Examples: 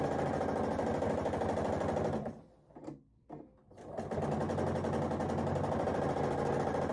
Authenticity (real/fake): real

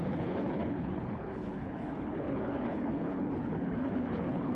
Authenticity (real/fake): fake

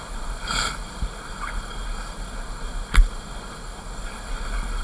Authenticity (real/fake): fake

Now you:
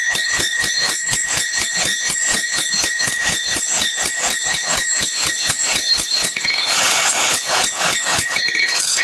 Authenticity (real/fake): fake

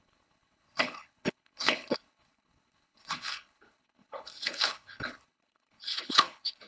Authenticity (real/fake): fake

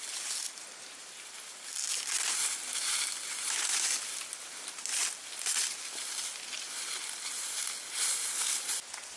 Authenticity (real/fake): real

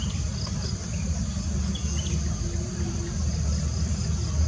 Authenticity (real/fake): real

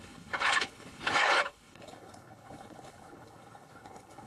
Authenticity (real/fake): fake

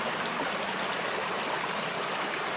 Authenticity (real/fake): real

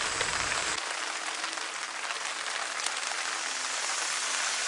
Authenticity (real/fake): real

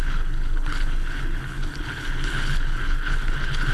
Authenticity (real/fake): fake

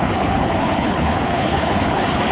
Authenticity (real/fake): fake